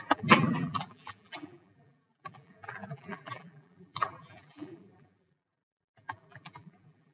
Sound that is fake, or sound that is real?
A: fake